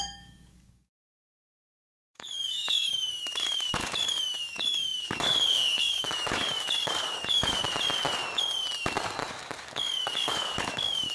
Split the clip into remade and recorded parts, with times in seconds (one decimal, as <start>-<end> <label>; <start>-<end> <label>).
0.0-7.6 remade; 7.6-9.3 recorded; 9.3-11.1 remade